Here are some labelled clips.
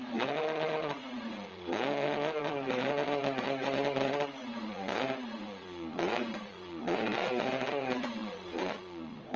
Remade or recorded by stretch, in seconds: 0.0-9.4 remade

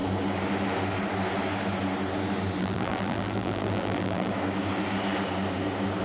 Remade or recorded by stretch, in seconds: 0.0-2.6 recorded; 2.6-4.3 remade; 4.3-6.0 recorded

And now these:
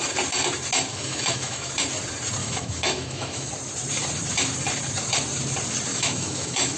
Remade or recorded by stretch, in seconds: 0.0-0.9 recorded; 0.9-1.7 remade; 1.7-2.4 recorded; 2.4-3.5 remade; 3.5-5.9 recorded; 5.9-6.8 remade

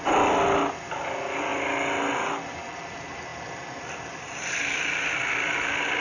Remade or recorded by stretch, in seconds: 0.0-6.0 recorded

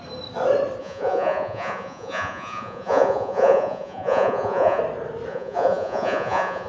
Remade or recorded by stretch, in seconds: 0.0-0.8 recorded; 0.8-4.8 remade; 4.8-5.3 recorded; 5.3-6.7 remade

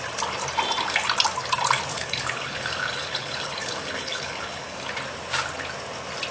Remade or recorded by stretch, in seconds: 0.0-1.9 recorded; 1.9-4.9 remade; 4.9-6.3 recorded